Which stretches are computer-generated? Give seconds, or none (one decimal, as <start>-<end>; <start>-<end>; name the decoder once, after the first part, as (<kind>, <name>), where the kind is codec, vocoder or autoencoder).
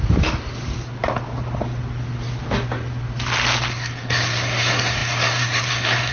3.7-6.1 (codec, SNAC)